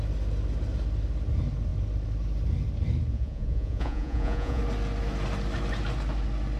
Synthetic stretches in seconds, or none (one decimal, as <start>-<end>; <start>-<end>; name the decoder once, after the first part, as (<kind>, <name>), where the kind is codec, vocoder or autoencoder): 3.1-4.6 (vocoder, Vocos)